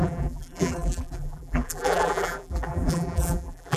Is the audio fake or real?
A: fake